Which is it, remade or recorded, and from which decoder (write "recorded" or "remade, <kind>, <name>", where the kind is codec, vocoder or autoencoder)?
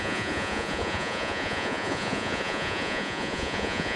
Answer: remade, vocoder, Vocos